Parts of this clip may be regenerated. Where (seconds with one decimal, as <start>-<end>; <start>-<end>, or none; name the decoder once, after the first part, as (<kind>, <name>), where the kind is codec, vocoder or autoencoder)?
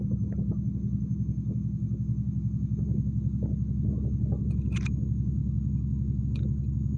none